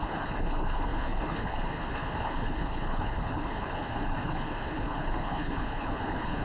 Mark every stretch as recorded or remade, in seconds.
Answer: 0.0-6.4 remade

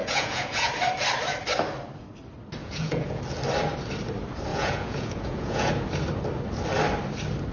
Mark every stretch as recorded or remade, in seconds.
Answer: 0.0-0.7 remade; 0.7-2.6 recorded; 2.6-3.2 remade; 3.2-4.5 recorded; 4.5-5.7 remade; 5.7-7.5 recorded

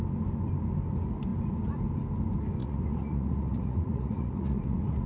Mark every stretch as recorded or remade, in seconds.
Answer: 0.0-2.6 recorded; 2.6-5.1 remade